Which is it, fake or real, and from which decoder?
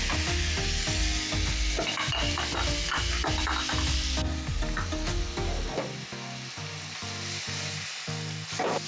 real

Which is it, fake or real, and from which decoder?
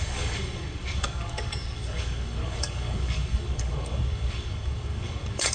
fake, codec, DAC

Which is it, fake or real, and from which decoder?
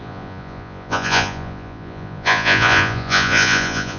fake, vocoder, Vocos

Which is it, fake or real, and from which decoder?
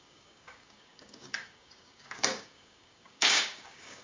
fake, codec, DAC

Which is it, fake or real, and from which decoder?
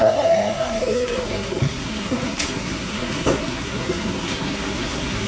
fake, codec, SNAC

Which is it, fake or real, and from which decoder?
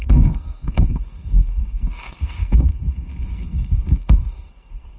fake, codec, SNAC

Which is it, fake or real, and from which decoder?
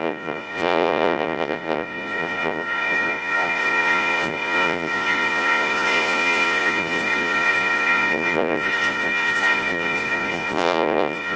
fake, vocoder, Vocos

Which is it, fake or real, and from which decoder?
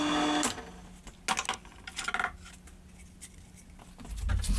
real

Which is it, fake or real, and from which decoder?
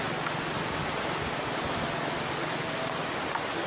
real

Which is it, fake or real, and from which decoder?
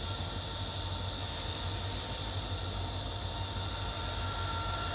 real